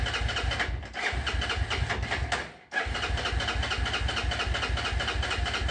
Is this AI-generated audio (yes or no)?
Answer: no